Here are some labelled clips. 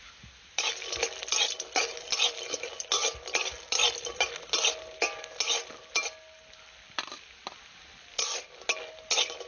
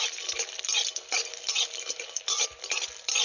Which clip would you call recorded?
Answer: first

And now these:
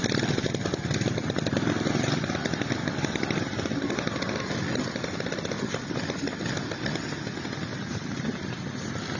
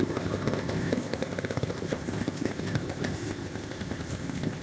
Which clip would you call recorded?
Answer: first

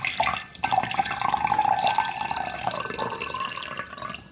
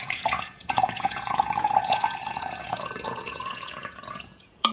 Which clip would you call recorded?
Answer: first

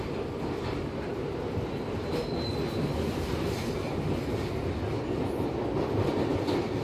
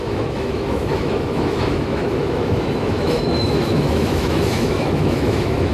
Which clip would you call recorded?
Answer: first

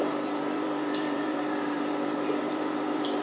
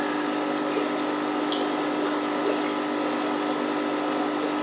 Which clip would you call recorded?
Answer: second